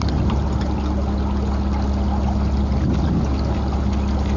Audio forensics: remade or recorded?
recorded